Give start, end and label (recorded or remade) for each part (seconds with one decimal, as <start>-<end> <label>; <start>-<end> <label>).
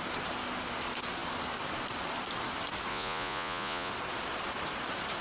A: 0.0-2.9 recorded; 2.9-3.9 remade; 3.9-5.2 recorded